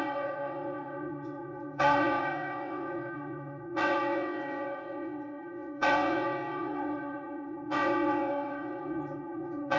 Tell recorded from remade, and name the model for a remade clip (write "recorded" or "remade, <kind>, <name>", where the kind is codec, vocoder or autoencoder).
remade, vocoder, WaveNeXt